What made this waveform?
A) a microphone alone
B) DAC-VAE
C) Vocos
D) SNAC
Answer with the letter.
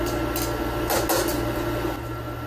A